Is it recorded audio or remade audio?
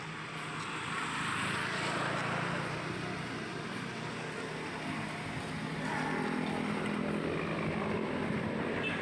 recorded